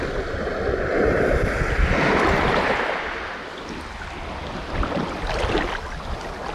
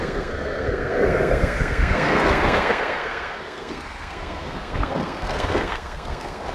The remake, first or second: second